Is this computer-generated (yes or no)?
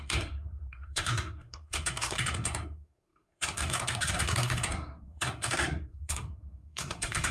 yes